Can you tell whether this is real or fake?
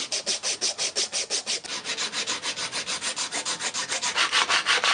real